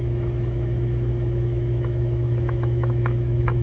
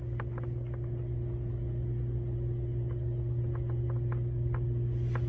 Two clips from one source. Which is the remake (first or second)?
first